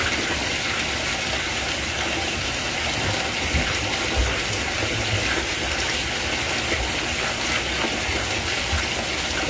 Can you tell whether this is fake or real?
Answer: real